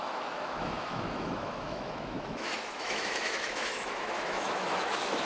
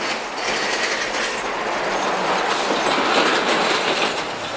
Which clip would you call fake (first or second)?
first